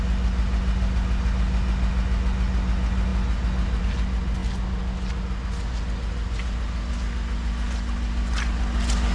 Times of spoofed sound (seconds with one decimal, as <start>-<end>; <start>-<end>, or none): none